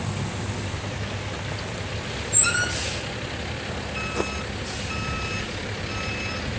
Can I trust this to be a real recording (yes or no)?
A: yes